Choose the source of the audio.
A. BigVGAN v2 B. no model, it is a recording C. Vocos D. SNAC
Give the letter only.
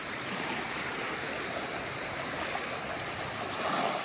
A